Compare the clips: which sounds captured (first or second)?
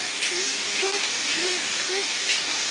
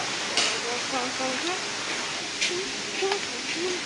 second